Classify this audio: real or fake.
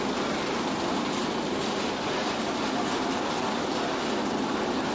real